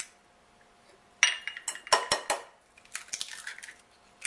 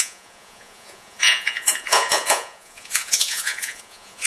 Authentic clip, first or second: first